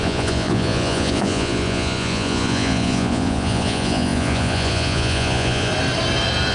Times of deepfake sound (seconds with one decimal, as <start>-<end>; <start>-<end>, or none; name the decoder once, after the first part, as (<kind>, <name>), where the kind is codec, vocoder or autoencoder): 0.0-5.7 (vocoder, Vocos)